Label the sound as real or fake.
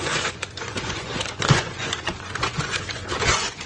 fake